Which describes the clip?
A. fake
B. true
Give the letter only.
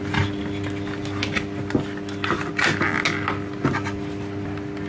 B